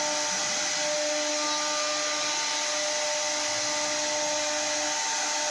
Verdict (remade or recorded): recorded